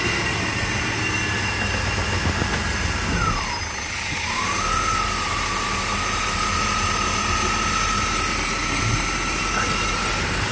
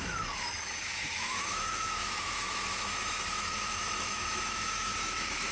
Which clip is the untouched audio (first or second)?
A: first